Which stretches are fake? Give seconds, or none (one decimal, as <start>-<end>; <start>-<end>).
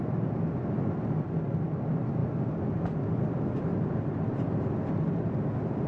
none